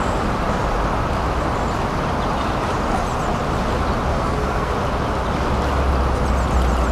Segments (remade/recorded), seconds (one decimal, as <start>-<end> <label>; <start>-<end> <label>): 0.0-4.1 recorded; 4.1-4.7 remade; 4.7-6.9 recorded